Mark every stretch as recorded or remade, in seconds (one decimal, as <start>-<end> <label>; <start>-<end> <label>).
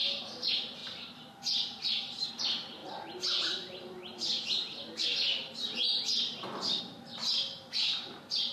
0.0-8.5 recorded